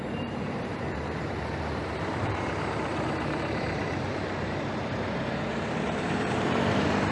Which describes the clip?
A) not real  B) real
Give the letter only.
A